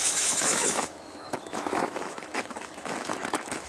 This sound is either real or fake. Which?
fake